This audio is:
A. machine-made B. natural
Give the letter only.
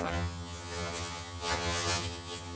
A